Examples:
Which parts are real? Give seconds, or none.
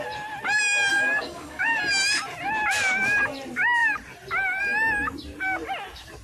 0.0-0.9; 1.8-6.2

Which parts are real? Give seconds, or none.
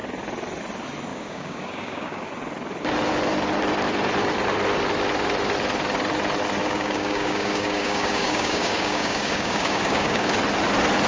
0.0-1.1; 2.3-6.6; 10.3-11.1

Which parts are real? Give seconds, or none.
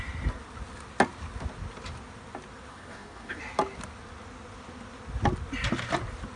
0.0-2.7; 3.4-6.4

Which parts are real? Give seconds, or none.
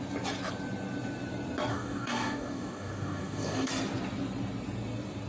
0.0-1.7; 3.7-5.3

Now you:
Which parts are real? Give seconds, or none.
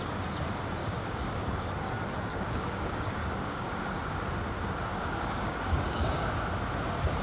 0.0-0.8; 1.7-2.3; 3.8-5.0; 6.4-7.2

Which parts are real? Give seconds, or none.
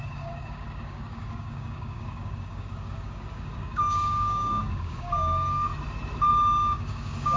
5.7-6.3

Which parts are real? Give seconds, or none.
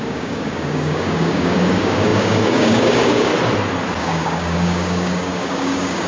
3.3-4.0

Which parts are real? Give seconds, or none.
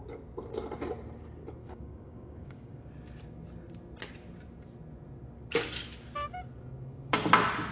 0.0-1.6; 2.9-7.7